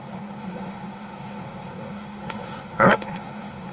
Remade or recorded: remade